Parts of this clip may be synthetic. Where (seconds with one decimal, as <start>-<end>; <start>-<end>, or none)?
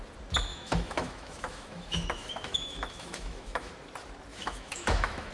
0.5-3.7; 4.3-5.3